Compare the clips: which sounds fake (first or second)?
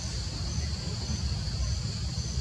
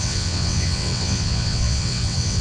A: second